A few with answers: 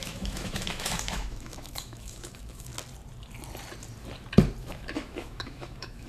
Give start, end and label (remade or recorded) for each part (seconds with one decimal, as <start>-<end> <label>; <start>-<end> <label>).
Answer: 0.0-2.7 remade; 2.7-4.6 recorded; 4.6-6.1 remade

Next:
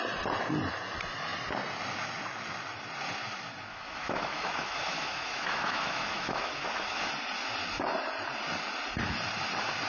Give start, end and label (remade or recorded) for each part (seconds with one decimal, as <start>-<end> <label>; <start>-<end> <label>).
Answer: 0.0-3.7 recorded; 3.7-7.1 remade; 7.1-9.9 recorded

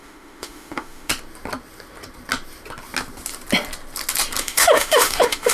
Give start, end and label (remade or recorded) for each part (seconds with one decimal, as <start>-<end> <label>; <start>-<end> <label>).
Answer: 0.0-1.1 remade; 1.1-4.4 recorded; 4.4-5.5 remade